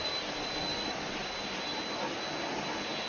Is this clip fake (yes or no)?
no